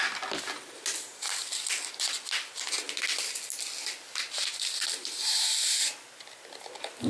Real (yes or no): yes